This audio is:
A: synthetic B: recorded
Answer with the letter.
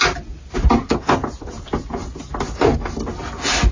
B